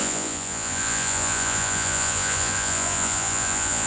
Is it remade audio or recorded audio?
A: remade